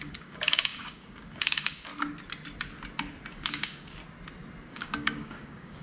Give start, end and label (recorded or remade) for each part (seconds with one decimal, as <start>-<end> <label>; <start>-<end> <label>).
0.0-1.9 remade; 1.9-3.3 recorded; 3.3-4.0 remade; 4.0-4.7 recorded; 4.7-5.8 remade